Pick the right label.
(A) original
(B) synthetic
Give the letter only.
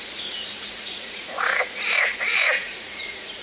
B